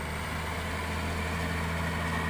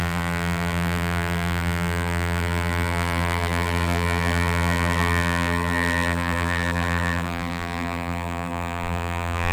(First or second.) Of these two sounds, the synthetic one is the second